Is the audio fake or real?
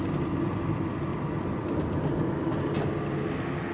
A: real